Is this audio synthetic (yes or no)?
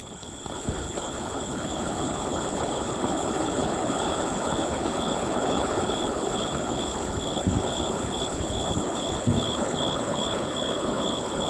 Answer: yes